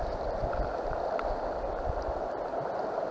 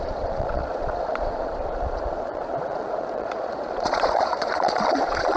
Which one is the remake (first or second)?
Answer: second